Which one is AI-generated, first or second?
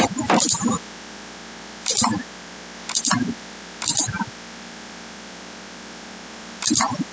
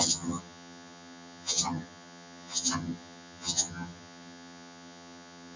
second